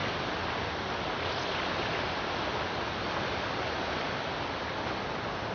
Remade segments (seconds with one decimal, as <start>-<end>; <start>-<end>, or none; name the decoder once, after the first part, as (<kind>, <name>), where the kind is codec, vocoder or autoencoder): none